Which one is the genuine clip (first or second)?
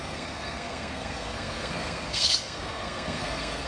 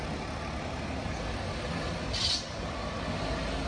second